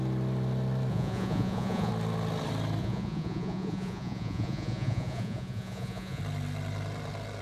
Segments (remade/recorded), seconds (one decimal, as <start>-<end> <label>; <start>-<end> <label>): 0.0-0.9 recorded; 0.9-1.9 remade; 1.9-2.8 recorded; 2.8-6.2 remade; 6.2-7.4 recorded